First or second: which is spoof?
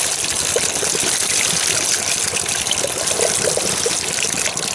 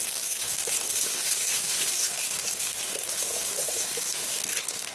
second